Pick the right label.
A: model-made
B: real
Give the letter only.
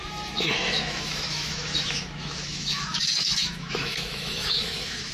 A